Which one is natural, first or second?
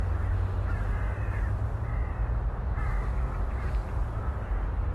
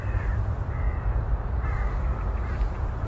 first